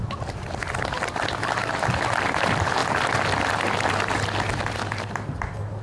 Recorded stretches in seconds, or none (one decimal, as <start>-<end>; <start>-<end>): 0.0-5.8